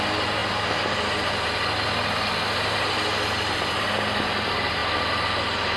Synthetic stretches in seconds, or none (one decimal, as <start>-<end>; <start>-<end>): none